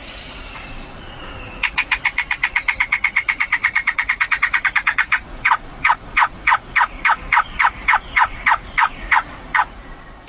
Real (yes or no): no